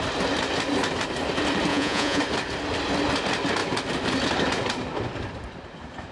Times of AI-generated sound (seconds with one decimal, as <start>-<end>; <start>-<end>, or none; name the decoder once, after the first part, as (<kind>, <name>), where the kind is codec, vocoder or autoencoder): 1.7-2.2 (vocoder, Vocos)

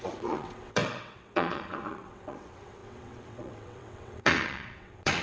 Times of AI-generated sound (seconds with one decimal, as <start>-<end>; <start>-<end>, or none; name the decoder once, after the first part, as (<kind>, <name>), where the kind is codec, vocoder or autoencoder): 0.0-5.2 (vocoder, WaveNeXt)

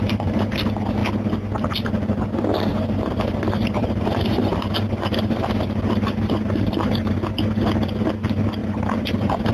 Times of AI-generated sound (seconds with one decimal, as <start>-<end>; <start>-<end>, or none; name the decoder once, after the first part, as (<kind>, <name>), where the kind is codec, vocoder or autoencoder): 2.7-7.1 (vocoder, BigVGAN v2); 8.6-9.5

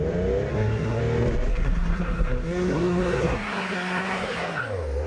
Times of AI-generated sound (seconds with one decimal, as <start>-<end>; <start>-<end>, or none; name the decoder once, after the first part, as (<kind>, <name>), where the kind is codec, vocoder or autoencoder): 0.5-1.0 (codec, SNAC); 1.5-4.6

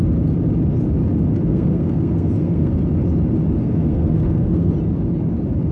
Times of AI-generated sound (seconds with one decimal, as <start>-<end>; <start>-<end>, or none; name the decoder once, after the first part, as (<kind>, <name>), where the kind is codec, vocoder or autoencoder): 1.5-2.7 (codec, SNAC); 3.6-4.7

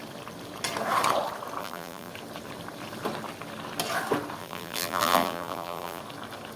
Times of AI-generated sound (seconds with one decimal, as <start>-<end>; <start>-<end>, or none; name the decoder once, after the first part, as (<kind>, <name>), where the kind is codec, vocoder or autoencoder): 1.6-2.1 (vocoder, BigVGAN v2); 4.4-6.0

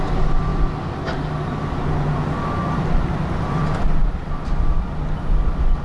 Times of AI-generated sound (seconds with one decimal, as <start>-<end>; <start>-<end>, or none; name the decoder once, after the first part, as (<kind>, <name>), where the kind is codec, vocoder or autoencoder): 0.0-5.8 (vocoder, BigVGAN v2)

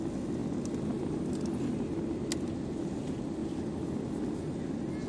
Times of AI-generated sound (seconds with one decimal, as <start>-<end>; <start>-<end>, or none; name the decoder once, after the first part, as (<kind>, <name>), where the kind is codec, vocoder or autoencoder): none